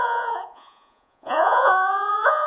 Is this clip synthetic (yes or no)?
yes